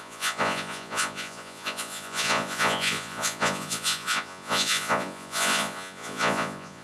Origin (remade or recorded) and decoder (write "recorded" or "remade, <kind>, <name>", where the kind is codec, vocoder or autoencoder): remade, vocoder, Vocos